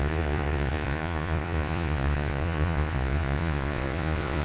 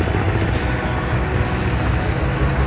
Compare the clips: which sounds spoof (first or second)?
first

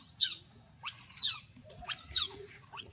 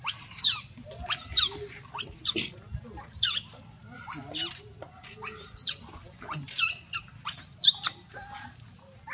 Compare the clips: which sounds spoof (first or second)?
first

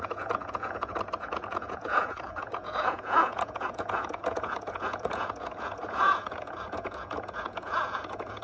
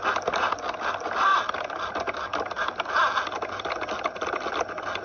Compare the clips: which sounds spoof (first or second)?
first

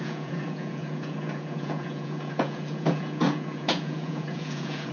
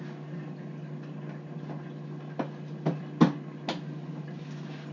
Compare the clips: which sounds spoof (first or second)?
first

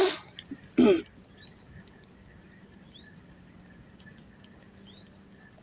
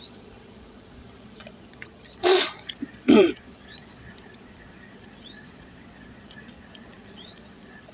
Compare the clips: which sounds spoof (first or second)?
second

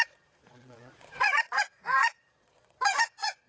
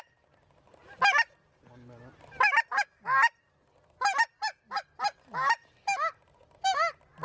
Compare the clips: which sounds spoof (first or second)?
first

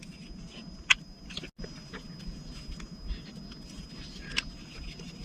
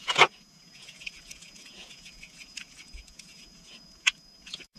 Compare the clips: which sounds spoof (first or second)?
second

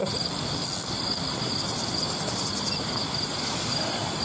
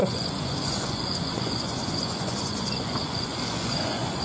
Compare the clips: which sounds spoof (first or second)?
second